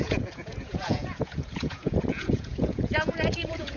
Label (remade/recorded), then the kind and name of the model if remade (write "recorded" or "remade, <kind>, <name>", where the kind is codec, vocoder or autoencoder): remade, vocoder, Vocos